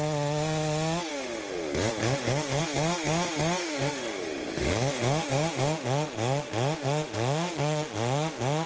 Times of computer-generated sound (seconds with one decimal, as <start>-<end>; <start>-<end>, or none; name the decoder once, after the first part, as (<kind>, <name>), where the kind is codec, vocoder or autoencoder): 1.1-1.6 (autoencoder, DAC-VAE); 2.0-2.6; 3.6-8.7